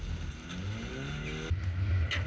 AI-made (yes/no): no